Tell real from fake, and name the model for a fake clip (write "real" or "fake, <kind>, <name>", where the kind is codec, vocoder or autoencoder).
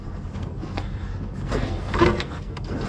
fake, codec, SNAC